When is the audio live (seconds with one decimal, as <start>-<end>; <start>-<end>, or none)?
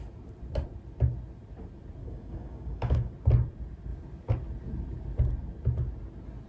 0.0-2.0; 3.1-6.5